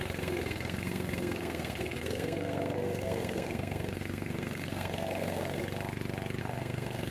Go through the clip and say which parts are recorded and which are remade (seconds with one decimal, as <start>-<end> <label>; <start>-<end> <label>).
0.0-5.6 remade; 5.6-6.4 recorded; 6.4-7.1 remade